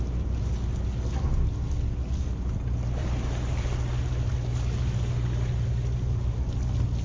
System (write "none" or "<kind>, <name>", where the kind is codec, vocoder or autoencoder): none